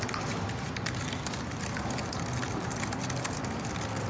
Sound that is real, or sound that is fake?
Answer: real